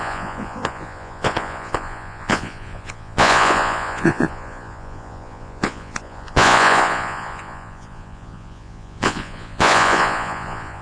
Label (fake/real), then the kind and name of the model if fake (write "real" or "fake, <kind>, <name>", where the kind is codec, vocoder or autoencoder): fake, vocoder, Vocos